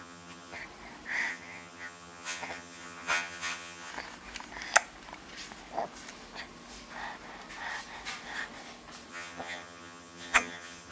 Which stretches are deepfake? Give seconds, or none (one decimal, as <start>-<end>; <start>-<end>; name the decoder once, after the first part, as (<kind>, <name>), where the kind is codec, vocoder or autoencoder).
0.0-0.6 (vocoder, HiFi-GAN); 1.3-3.9; 9.1-10.9